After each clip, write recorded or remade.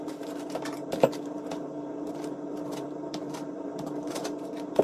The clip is remade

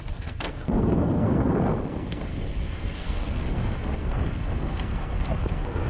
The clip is remade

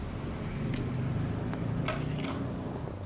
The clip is recorded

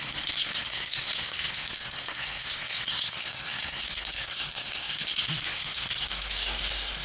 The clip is remade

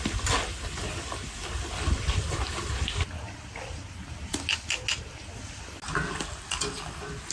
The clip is recorded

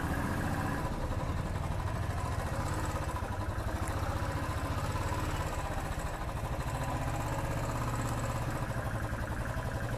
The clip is recorded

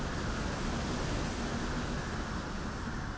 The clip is recorded